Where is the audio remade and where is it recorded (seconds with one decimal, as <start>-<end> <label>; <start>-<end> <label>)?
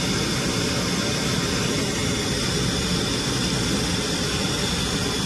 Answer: 0.0-5.3 recorded